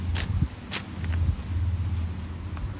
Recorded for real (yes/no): yes